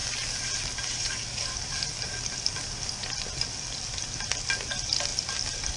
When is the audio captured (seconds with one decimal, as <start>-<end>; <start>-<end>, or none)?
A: 0.0-5.8